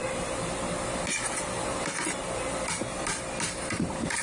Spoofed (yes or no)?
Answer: no